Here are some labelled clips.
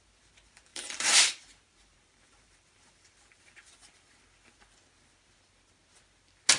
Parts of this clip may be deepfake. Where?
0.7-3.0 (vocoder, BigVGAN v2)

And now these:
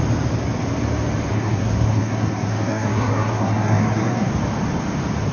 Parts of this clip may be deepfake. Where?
1.3-4.3 (codec, SNAC)

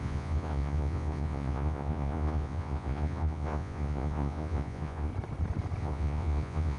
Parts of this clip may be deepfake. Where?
0.0-5.1 (vocoder, Vocos); 5.8-6.8

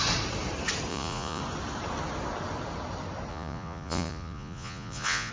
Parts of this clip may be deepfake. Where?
0.9-1.4 (vocoder, Vocos); 3.3-5.3

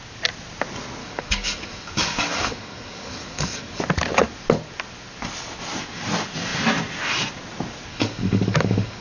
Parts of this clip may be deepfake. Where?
1.0-3.8 (codec, DAC); 7.9-9.0

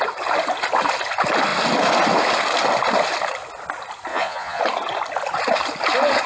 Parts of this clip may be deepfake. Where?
4.1-4.6 (vocoder, Vocos)

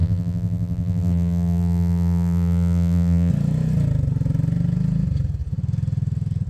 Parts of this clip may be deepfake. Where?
0.0-3.3 (vocoder, BigVGAN v2)